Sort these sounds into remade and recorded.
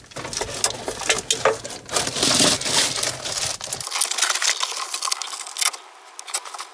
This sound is recorded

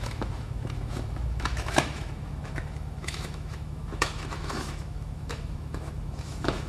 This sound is remade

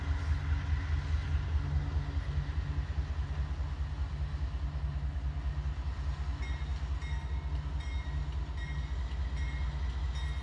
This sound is recorded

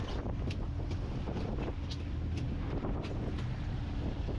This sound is recorded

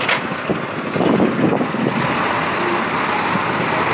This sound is recorded